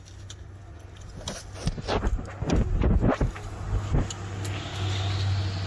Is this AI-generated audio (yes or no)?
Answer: no